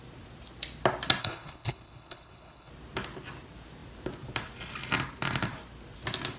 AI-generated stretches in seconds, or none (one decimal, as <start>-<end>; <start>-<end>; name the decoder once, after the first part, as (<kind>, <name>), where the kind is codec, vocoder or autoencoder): 1.2-2.7 (codec, HILCodec)